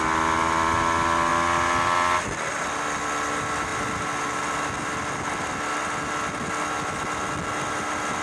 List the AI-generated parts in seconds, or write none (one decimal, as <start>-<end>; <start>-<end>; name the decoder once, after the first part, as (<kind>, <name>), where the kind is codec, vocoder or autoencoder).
none